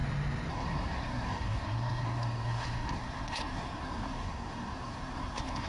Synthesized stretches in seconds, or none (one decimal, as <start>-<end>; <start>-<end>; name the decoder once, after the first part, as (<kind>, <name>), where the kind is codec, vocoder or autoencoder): 0.5-5.7 (codec, SNAC)